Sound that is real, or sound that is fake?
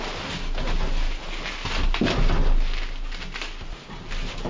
real